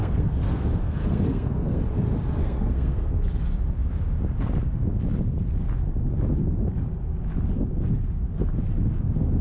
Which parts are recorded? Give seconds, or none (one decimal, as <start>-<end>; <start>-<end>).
1.8-2.4; 3.1-9.4